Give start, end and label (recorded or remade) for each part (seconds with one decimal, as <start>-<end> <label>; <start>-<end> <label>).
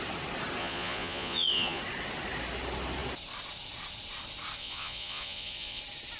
0.0-0.6 recorded; 0.6-1.8 remade; 1.8-4.6 recorded; 4.6-5.8 remade; 5.8-6.2 recorded